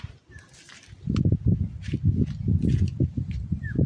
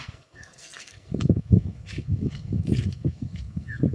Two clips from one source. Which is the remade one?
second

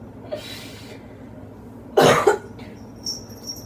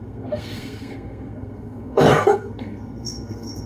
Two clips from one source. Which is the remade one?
second